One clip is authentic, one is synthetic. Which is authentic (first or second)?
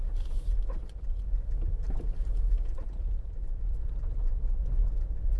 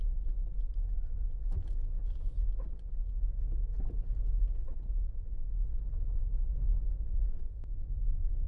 second